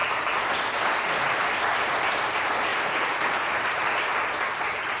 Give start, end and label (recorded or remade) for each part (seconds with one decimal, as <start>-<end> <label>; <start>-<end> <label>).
0.0-5.0 recorded